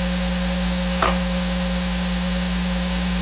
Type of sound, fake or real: real